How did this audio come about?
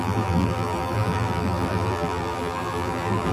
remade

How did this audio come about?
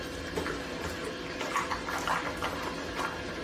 recorded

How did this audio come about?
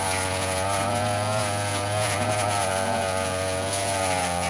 remade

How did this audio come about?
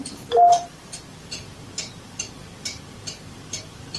remade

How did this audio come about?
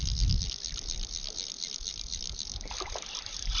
recorded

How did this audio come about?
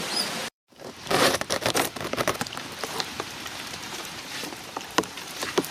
remade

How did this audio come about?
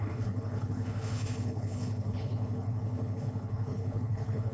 remade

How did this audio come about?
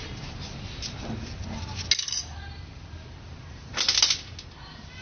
recorded